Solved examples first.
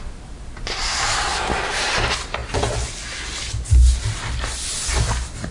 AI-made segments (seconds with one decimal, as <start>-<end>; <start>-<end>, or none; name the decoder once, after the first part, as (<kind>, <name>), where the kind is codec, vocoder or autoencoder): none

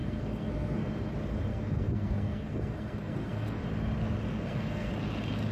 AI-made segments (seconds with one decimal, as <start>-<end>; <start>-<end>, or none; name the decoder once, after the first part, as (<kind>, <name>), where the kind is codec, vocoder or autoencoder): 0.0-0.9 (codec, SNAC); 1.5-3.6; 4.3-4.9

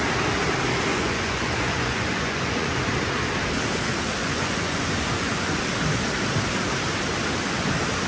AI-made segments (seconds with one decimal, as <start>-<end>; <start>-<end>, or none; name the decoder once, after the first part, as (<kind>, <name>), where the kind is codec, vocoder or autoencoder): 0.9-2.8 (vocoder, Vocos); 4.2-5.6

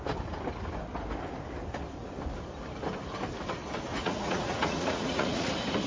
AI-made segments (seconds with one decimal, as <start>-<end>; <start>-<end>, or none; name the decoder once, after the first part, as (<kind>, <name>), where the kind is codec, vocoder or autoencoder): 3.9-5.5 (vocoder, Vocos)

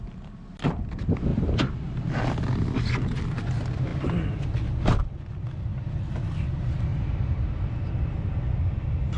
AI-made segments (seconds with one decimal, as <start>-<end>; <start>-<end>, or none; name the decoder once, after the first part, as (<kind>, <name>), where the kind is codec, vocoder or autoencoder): 1.3-2.4 (vocoder, BigVGAN v2); 6.9-7.5

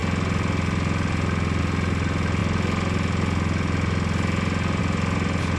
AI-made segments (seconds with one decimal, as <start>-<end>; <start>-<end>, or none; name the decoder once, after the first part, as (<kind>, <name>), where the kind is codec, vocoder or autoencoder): none

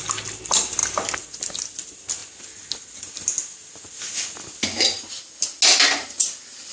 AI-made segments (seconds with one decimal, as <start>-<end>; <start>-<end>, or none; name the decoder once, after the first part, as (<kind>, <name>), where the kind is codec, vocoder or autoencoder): none

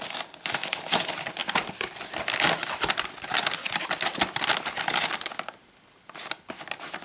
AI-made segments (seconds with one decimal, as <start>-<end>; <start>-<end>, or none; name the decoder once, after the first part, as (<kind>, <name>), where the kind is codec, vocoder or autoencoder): none